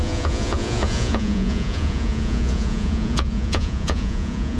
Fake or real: fake